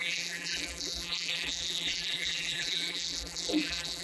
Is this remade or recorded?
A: remade